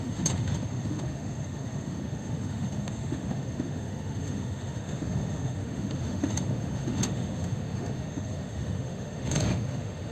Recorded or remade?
remade